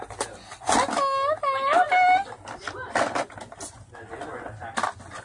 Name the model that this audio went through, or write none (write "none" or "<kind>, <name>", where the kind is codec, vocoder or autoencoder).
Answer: none